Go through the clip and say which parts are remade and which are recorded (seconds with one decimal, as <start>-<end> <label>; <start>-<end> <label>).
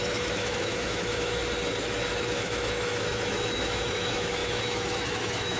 0.0-1.4 remade; 1.4-2.1 recorded; 2.1-5.6 remade